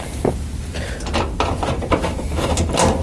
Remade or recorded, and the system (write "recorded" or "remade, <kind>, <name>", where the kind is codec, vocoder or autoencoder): recorded